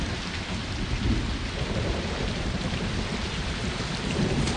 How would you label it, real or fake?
real